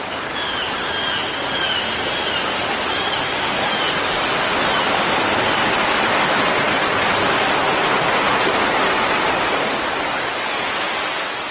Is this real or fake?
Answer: real